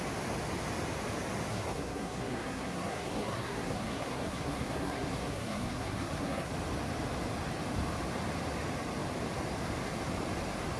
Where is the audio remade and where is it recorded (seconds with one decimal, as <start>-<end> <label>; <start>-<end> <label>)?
0.0-1.5 recorded; 1.5-6.5 remade; 6.5-10.8 recorded

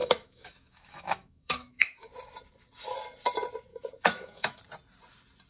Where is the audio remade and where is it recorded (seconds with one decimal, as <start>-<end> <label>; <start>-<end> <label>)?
0.0-2.1 remade; 2.1-3.7 recorded; 3.7-4.6 remade; 4.6-5.5 recorded

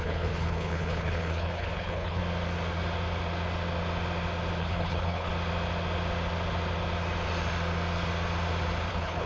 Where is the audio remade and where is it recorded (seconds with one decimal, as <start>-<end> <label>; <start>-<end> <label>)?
0.0-2.2 remade; 2.2-4.6 recorded; 4.6-5.3 remade; 5.3-8.9 recorded; 8.9-9.3 remade

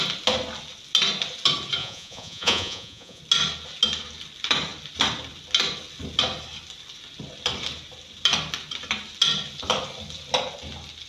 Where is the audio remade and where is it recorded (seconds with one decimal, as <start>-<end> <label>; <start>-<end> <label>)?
0.0-1.8 recorded; 1.8-3.2 remade; 3.2-11.1 recorded